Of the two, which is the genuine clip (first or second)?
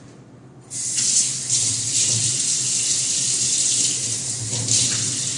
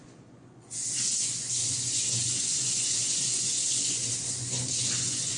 first